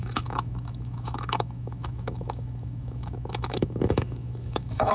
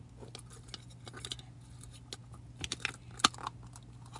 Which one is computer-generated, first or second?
first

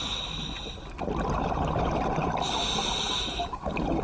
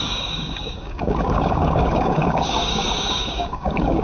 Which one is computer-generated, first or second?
second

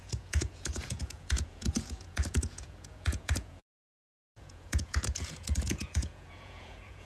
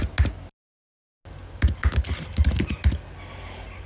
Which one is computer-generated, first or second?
first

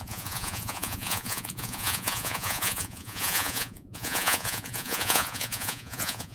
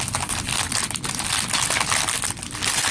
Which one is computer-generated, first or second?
first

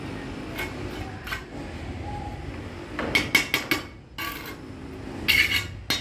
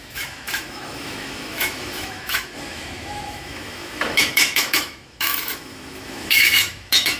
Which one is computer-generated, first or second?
second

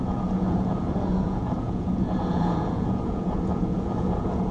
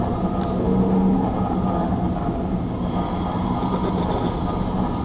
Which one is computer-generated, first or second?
first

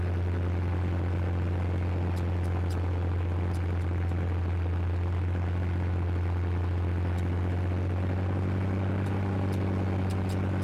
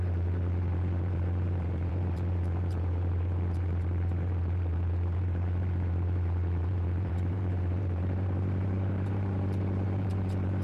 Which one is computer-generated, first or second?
second